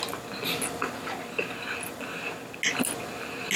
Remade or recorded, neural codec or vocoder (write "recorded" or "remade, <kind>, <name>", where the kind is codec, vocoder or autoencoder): recorded